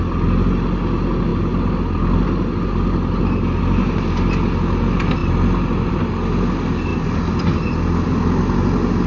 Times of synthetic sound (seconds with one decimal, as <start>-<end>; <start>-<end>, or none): none